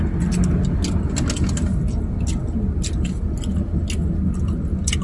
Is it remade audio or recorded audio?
recorded